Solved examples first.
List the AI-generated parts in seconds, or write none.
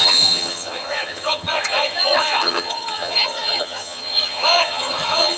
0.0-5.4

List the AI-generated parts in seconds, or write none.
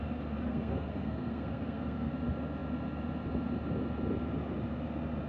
0.5-2.1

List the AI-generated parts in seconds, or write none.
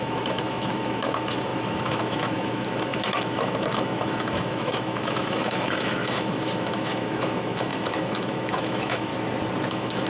0.0-9.1; 9.7-10.1